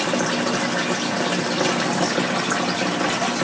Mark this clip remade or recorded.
recorded